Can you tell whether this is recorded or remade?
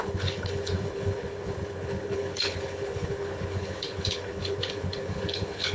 remade